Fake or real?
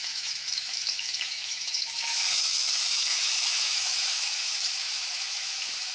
fake